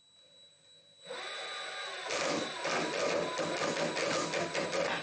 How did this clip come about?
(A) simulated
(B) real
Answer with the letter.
B